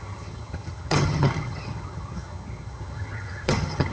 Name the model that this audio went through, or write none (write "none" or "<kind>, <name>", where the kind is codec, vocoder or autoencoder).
vocoder, HiFi-GAN